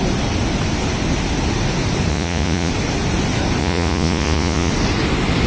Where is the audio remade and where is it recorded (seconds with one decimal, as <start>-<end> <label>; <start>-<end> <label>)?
0.0-2.1 recorded; 2.1-2.7 remade; 2.7-3.6 recorded; 3.6-4.7 remade; 4.7-5.5 recorded